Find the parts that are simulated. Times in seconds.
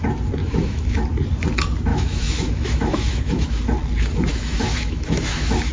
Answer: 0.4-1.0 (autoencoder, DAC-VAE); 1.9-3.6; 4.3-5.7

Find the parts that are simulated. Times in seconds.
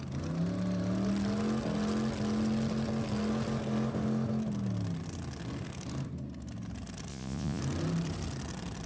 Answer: 7.1-7.6 (vocoder, Vocos)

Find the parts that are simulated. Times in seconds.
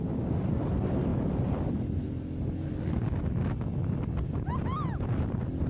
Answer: none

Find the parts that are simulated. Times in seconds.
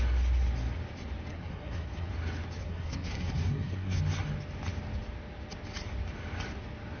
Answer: 1.3-2.1 (codec, SNAC); 2.6-4.0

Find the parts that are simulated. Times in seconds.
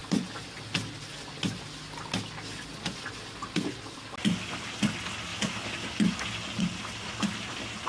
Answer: none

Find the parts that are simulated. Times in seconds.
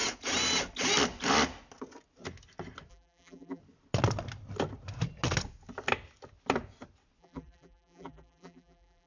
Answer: 2.9-3.6 (vocoder, BigVGAN v2); 7.2-9.1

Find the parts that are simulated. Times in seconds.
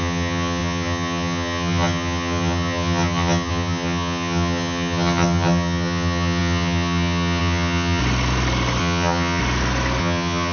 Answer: 0.0-8.0 (vocoder, HiFi-GAN); 8.8-9.4; 10.0-10.5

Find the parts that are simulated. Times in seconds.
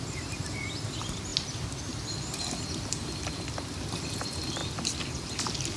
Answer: none